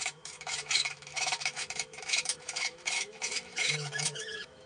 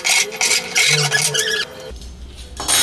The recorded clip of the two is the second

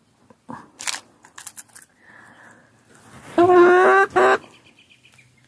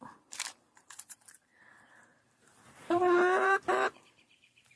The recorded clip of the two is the first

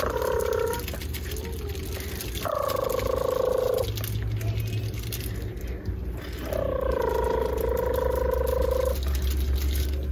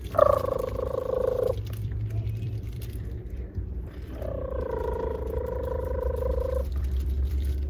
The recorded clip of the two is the first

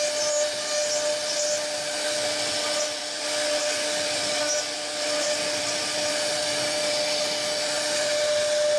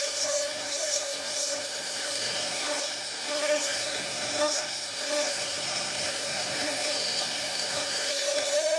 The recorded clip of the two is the first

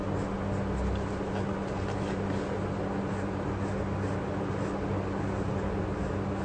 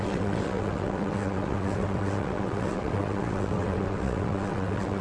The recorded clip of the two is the first